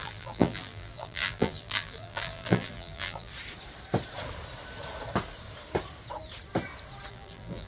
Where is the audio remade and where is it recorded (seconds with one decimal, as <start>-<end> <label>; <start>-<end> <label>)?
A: 0.0-3.3 remade; 3.3-7.1 recorded; 7.1-7.7 remade

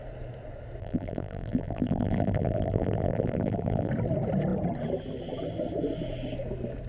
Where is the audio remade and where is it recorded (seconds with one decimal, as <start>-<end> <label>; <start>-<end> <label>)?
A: 0.0-0.8 recorded; 0.8-3.9 remade; 3.9-6.9 recorded

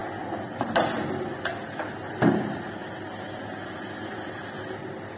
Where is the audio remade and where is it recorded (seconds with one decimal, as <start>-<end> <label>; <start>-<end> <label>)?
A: 0.0-5.2 recorded

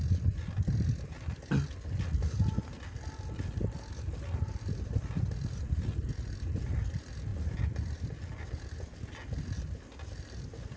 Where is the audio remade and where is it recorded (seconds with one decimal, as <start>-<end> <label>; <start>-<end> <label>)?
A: 0.0-10.8 recorded

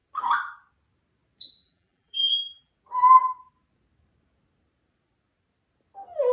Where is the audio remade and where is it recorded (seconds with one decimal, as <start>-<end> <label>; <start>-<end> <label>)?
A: 0.0-1.6 recorded; 1.6-2.7 remade; 2.7-6.3 recorded

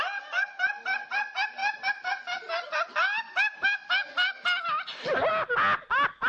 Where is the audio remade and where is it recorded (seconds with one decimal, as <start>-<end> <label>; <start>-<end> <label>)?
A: 0.0-6.3 recorded